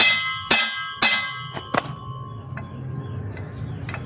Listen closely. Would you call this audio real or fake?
real